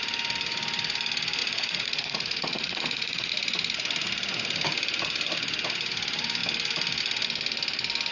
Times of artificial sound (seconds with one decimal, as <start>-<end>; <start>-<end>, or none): 1.4-3.3